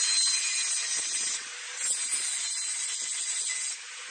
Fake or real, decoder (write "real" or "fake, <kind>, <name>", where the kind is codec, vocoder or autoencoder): real